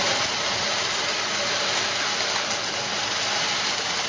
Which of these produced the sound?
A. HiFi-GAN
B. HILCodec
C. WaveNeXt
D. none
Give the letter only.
D